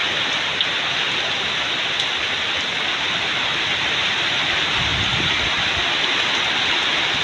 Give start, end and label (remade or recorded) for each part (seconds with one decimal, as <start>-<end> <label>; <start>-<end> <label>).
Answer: 0.0-7.2 recorded